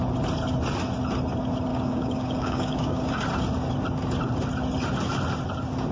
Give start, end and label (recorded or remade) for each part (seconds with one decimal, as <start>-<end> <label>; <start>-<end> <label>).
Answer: 0.0-1.7 recorded; 1.7-3.1 remade; 3.1-5.9 recorded